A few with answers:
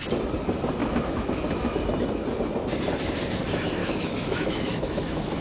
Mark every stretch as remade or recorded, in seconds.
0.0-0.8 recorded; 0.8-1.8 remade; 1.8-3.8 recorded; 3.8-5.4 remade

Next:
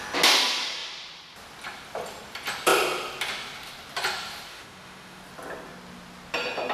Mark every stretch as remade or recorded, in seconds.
0.0-4.5 recorded; 4.5-5.2 remade; 5.2-6.7 recorded